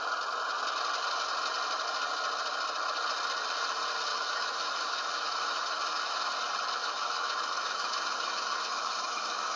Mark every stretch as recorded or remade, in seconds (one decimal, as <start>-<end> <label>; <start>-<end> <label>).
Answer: 0.0-4.1 recorded; 4.1-6.3 remade; 6.3-6.8 recorded; 6.8-9.6 remade